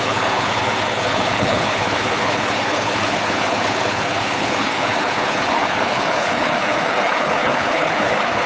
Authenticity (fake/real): fake